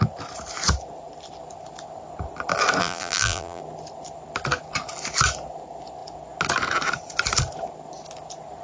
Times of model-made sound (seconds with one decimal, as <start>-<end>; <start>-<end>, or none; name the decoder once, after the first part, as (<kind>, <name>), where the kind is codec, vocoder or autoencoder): 2.8-3.6 (vocoder, BigVGAN v2)